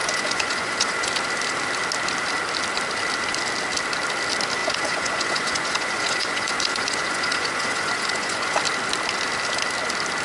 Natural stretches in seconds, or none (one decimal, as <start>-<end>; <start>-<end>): 1.1-4.6; 8.6-10.2